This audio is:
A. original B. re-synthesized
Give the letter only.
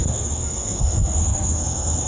B